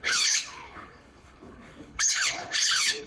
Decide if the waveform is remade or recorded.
remade